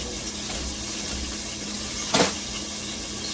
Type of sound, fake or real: real